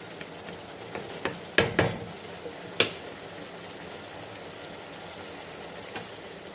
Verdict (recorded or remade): recorded